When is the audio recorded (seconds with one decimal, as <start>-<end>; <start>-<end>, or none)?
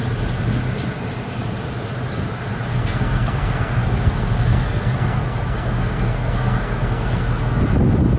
0.0-2.7; 7.6-8.2